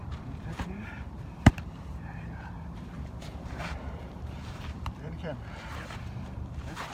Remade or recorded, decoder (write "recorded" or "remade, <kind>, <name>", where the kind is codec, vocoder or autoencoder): remade, vocoder, BigVGAN v2